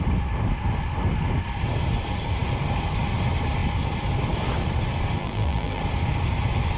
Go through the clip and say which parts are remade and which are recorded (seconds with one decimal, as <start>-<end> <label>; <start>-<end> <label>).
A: 0.0-5.2 recorded; 5.2-5.8 remade; 5.8-6.8 recorded